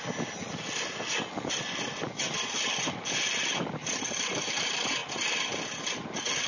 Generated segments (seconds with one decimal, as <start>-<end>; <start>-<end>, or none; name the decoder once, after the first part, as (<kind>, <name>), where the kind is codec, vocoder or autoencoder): none